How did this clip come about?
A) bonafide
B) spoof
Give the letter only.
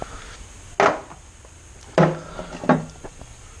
A